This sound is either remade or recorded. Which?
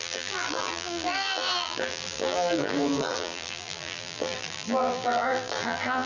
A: remade